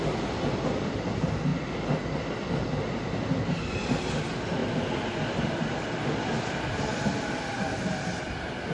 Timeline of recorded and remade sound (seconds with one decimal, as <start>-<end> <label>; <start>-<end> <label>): 0.0-8.7 recorded